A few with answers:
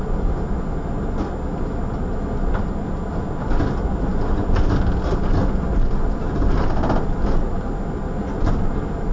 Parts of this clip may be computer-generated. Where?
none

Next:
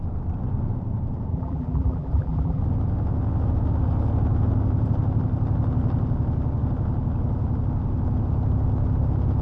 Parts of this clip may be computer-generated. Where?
1.3-2.6 (vocoder, BigVGAN v2)